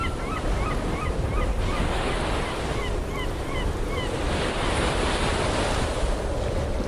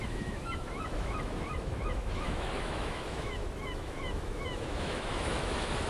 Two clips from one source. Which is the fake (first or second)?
second